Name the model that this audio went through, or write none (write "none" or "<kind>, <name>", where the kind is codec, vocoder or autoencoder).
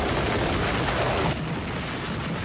none